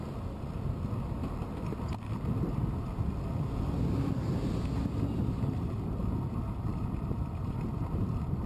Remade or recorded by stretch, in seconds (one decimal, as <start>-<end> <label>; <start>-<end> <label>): 0.0-6.7 recorded; 6.7-8.0 remade; 8.0-8.5 recorded